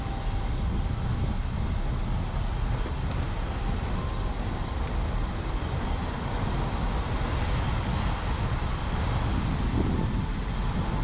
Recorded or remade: recorded